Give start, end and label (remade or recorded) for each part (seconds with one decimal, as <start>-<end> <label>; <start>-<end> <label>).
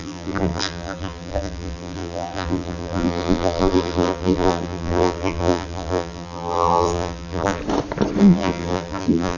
0.0-7.6 remade; 7.6-8.2 recorded; 8.2-9.4 remade